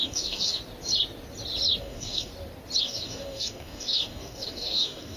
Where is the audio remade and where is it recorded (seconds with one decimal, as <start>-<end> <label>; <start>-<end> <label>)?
0.0-0.6 remade; 0.6-1.8 recorded; 1.8-2.3 remade; 2.3-2.8 recorded; 2.8-5.2 remade